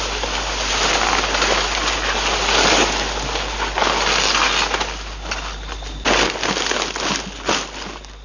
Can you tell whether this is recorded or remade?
recorded